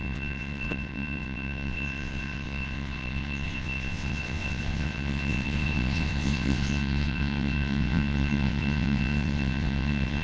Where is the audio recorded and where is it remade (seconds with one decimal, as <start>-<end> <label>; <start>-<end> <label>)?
0.0-10.2 remade